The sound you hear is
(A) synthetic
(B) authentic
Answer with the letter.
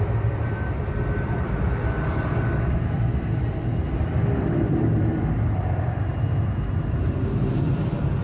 A